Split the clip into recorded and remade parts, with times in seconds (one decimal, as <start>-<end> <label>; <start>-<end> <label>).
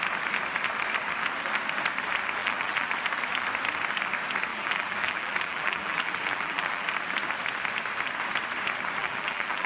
0.0-2.4 recorded; 2.4-2.9 remade; 2.9-4.5 recorded; 4.5-6.9 remade; 6.9-9.0 recorded; 9.0-9.7 remade